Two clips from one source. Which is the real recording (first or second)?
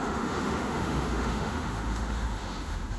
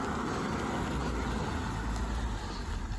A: second